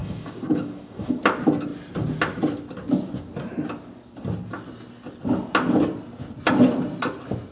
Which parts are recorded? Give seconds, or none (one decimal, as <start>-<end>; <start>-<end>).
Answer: 1.2-7.5